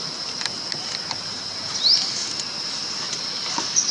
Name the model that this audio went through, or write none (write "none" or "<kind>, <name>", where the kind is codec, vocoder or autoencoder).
none